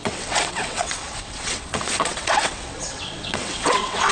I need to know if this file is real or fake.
fake